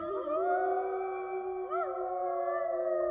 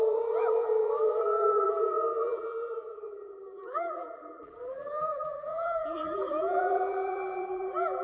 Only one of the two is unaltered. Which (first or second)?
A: first